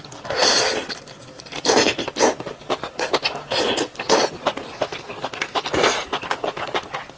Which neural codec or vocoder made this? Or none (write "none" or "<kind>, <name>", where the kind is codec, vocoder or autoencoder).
vocoder, BigVGAN v2